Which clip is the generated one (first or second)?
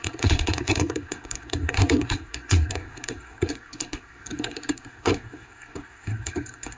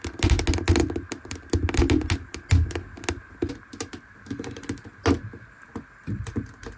first